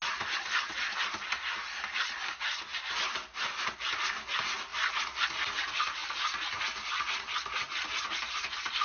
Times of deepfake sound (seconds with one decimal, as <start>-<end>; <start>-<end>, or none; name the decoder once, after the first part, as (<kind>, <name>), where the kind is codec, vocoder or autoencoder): none